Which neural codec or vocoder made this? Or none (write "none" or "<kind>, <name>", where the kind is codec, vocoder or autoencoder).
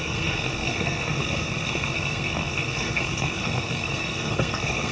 codec, SNAC